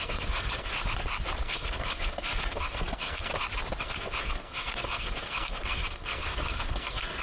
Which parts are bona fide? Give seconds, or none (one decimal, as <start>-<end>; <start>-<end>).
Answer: 0.7-1.4; 3.3-3.8